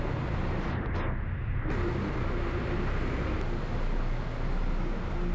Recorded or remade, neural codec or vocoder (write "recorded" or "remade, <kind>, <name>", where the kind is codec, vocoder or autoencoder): recorded